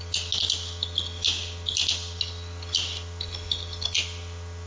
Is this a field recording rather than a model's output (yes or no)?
yes